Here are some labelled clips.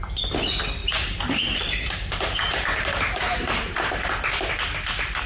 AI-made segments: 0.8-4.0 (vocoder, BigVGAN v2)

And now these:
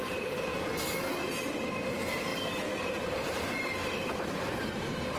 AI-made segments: 0.0-0.5 (vocoder, BigVGAN v2); 1.4-5.2